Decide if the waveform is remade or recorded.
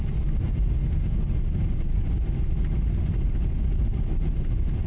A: recorded